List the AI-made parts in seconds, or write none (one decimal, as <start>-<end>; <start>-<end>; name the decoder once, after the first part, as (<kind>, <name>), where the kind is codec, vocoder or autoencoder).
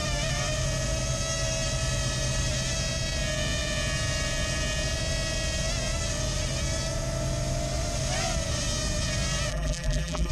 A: 9.5-10.3 (vocoder, BigVGAN v2)